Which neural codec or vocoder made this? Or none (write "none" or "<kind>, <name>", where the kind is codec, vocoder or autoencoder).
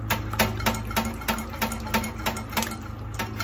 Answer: none